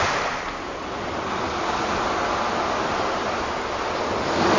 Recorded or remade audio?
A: recorded